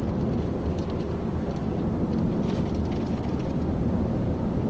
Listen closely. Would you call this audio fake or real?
real